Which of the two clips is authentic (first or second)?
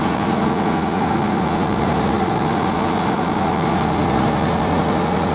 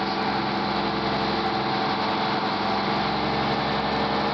second